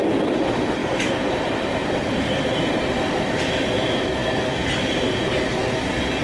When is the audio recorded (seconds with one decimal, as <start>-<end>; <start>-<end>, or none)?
0.0-0.8; 3.3-6.2